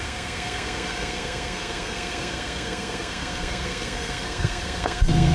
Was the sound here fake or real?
fake